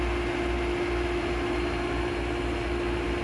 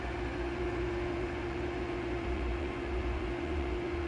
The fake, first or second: second